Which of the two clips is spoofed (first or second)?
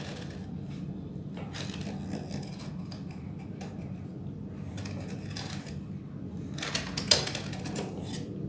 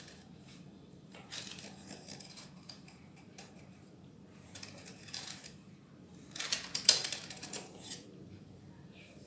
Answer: second